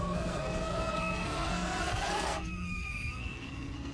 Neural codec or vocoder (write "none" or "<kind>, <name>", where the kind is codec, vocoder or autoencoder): codec, SNAC